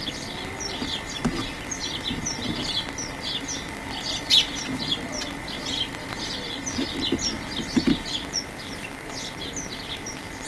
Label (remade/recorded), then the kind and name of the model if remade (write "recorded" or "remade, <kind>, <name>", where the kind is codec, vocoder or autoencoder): recorded